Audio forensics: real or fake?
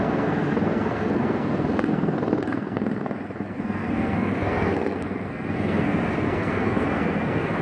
fake